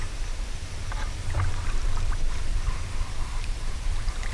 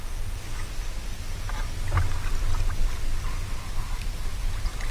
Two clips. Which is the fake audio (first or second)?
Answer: first